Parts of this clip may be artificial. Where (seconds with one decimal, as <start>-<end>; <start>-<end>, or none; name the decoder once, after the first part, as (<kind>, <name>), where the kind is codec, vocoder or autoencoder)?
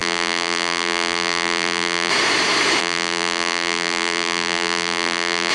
0.0-2.1 (vocoder, BigVGAN v2); 2.8-5.5